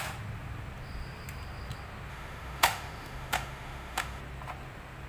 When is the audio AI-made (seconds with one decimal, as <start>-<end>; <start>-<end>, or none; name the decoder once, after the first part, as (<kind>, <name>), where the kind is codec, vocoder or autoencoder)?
2.1-4.2 (autoencoder, DAC-VAE)